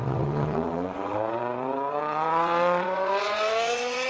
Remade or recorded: remade